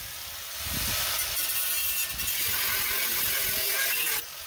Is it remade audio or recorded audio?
recorded